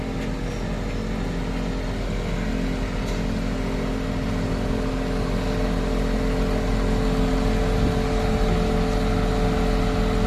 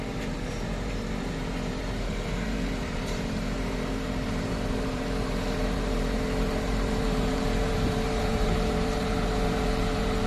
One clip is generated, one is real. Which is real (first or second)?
first